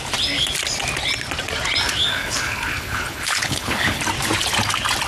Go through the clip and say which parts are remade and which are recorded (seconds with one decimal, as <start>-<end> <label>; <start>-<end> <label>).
0.0-2.1 recorded; 2.1-4.0 remade; 4.0-5.1 recorded